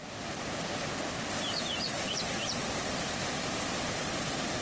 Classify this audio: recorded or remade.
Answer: recorded